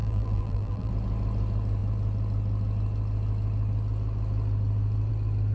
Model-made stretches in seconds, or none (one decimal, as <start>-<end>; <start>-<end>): 0.0-0.9